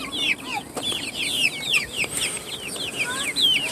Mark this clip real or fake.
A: real